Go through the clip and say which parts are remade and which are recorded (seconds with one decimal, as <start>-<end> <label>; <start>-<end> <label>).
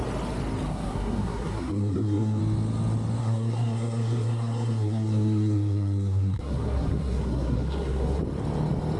0.0-0.7 recorded; 0.7-2.4 remade; 2.4-3.2 recorded; 3.2-8.2 remade; 8.2-9.0 recorded